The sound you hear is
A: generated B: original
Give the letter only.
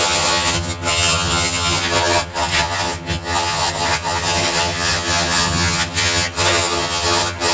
A